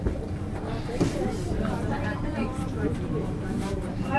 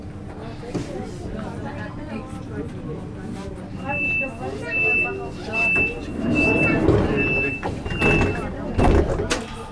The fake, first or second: first